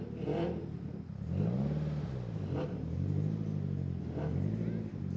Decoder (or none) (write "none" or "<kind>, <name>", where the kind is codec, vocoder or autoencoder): none